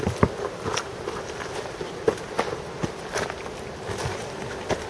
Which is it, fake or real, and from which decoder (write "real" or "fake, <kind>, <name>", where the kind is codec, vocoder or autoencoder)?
real